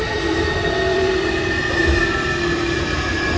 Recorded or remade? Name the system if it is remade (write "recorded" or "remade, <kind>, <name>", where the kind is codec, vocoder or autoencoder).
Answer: remade, vocoder, BigVGAN v2